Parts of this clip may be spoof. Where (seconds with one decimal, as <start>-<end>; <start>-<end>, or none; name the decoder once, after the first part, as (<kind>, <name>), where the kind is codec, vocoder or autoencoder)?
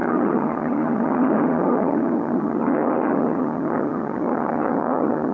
0.0-5.3 (vocoder, HiFi-GAN)